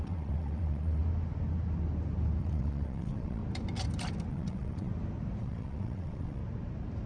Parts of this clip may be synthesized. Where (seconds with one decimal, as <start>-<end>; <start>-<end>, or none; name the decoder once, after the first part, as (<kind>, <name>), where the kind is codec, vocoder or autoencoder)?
0.0-1.0 (vocoder, WaveNeXt); 2.4-3.4; 4.3-4.9; 5.4-6.4